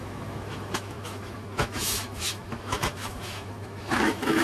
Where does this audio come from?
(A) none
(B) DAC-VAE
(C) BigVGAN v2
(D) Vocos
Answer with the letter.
B